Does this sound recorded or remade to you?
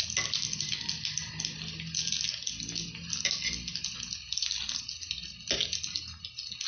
recorded